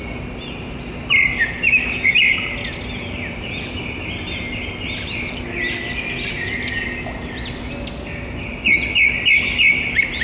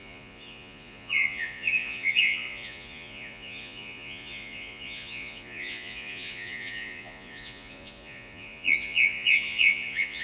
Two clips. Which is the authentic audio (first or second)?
first